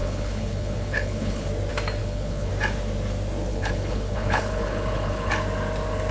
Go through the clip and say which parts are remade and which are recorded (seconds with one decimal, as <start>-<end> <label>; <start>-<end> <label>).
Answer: 0.0-1.5 remade; 1.5-2.0 recorded; 2.0-2.5 remade; 2.5-3.5 recorded; 3.5-5.3 remade; 5.3-6.1 recorded